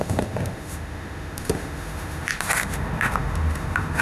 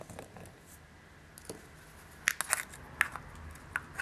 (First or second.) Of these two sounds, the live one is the second